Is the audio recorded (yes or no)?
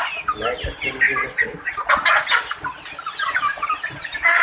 yes